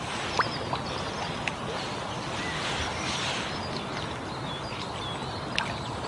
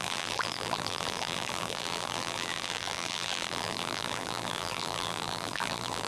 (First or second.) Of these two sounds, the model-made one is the second